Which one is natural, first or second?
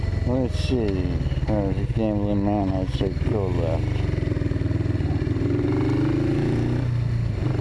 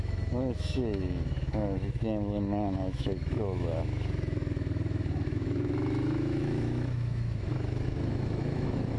first